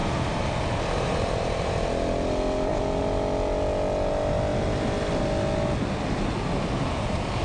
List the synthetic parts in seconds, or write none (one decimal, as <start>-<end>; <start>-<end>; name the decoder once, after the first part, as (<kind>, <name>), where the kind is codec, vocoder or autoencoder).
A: none

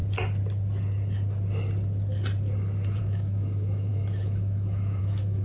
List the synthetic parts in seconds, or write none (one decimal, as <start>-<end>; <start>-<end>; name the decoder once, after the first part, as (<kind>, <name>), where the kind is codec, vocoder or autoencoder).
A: 3.0-5.4 (autoencoder, DAC-VAE)

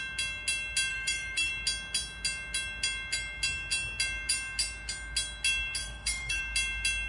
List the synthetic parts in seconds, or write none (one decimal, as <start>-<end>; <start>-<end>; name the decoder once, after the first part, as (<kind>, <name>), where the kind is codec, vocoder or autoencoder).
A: 0.9-1.5 (autoencoder, DAC-VAE); 5.8-6.4

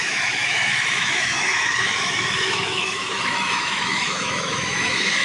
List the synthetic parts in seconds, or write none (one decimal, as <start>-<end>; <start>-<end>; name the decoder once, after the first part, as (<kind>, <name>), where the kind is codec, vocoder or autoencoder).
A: 0.0-5.2 (autoencoder, DAC-VAE)